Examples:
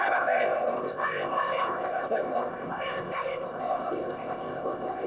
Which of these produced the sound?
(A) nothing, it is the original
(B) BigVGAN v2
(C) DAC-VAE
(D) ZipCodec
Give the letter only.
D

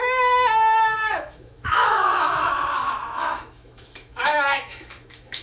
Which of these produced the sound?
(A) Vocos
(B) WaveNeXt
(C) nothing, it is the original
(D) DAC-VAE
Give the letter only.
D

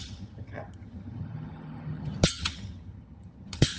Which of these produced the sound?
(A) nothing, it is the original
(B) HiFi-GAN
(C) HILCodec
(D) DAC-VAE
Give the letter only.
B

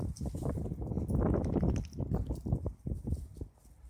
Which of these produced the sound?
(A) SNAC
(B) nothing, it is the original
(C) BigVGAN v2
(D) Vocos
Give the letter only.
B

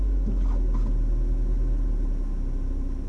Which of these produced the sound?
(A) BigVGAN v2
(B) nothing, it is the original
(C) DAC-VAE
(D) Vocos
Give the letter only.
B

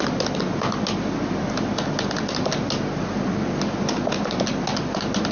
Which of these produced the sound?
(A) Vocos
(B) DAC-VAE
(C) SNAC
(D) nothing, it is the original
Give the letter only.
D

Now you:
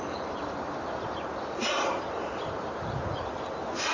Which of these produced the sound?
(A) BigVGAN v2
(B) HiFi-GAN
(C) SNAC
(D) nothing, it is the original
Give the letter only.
D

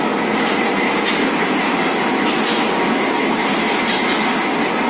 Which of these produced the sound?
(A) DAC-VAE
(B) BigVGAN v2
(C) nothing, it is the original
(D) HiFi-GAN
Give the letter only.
C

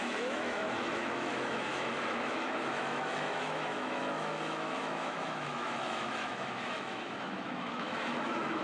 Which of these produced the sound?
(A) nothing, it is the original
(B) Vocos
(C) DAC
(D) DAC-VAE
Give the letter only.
D